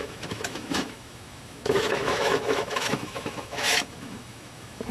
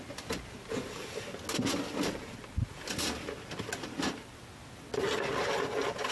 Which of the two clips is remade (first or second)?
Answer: first